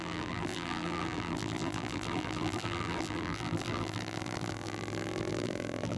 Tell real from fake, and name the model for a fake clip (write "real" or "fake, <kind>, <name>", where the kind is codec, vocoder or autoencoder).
fake, vocoder, BigVGAN v2